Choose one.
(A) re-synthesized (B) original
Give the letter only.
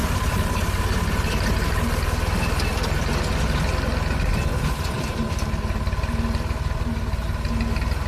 B